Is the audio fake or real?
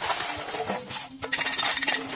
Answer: real